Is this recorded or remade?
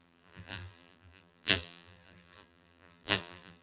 remade